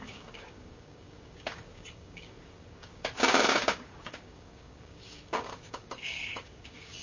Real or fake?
fake